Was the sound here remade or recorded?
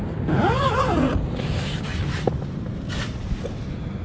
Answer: recorded